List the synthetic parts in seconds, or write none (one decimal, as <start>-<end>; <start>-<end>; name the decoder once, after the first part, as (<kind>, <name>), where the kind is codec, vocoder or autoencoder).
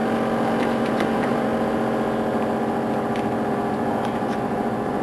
0.6-1.5 (vocoder, Vocos); 3.5-5.0